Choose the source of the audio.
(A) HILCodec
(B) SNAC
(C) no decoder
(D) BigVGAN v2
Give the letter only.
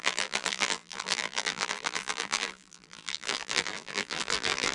D